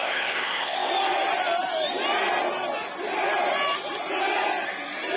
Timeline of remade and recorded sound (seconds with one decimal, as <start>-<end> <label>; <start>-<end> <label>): 0.0-0.9 remade; 0.9-5.2 recorded